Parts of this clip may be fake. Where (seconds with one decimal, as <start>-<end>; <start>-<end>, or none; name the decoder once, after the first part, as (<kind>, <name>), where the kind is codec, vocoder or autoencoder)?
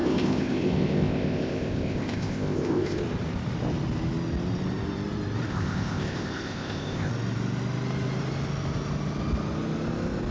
0.0-3.0 (codec, ZipCodec); 5.5-7.1